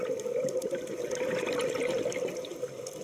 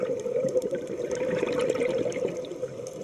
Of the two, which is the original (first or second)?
first